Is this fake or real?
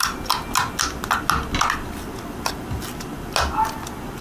real